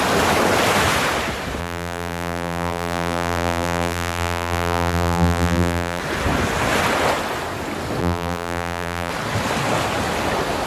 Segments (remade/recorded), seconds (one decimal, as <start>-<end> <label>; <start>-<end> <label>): 0.0-1.6 recorded; 1.6-6.0 remade; 6.0-8.0 recorded; 8.0-9.1 remade; 9.1-10.7 recorded